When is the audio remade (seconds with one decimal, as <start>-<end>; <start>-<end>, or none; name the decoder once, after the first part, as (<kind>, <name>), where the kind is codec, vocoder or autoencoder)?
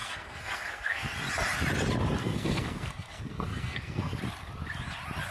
0.0-1.1 (codec, SNAC); 2.2-4.2